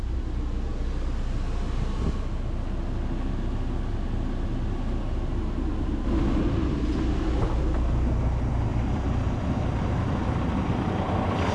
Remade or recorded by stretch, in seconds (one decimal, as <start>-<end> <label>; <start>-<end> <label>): 0.0-8.7 recorded; 8.7-9.6 remade; 9.6-11.5 recorded